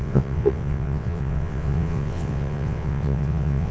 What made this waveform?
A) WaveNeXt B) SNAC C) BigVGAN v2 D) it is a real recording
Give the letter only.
A